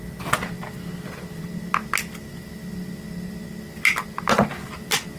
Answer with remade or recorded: recorded